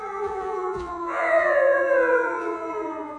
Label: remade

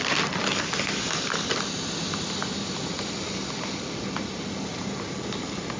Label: recorded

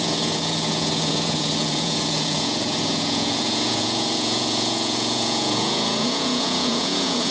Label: remade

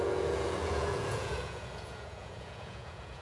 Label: remade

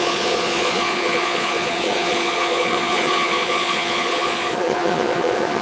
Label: remade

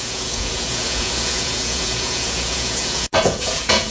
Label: remade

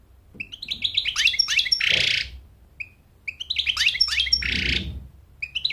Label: recorded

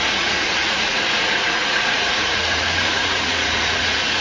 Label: remade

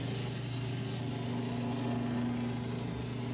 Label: recorded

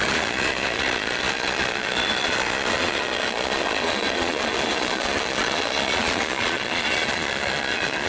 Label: remade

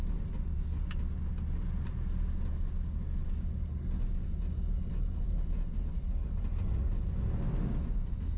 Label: recorded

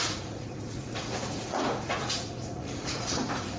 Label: remade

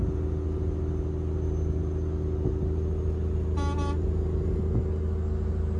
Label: recorded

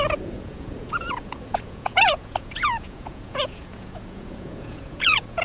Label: remade